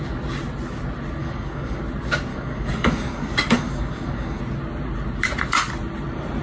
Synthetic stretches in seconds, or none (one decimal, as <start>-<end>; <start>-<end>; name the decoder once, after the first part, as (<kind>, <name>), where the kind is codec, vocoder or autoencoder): 1.2-1.8 (codec, DAC); 2.3-4.4